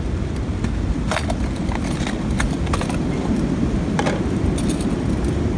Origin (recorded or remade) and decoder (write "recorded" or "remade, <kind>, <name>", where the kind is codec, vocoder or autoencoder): recorded